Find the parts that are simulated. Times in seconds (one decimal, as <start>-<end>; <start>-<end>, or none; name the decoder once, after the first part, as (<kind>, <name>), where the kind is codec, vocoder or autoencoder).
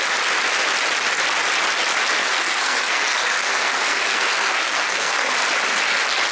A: 2.2-5.3 (codec, SNAC)